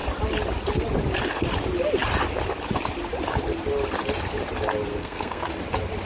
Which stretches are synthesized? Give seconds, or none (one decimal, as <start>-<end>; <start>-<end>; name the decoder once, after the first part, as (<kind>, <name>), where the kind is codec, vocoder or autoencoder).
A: 4.9-5.5 (codec, SNAC)

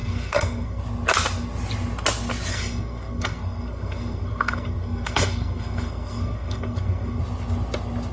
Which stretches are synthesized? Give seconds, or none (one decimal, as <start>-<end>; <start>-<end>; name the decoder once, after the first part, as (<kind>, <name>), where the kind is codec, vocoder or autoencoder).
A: 0.0-0.8 (codec, SNAC); 2.5-7.2